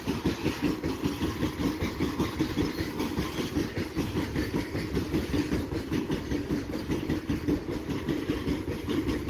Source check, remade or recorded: recorded